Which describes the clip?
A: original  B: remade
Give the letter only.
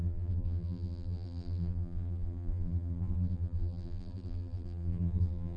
B